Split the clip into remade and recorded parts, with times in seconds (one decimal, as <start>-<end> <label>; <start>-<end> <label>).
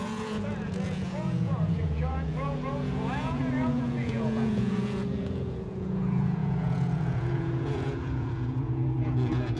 0.0-9.6 remade